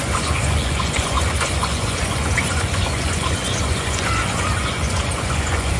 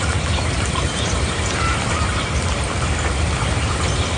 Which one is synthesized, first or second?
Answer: first